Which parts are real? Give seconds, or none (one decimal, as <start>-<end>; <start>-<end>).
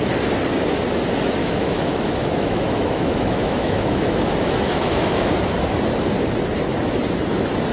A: 0.0-1.4; 5.3-7.7